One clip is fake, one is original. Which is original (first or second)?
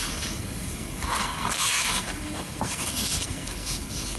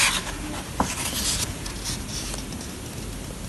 second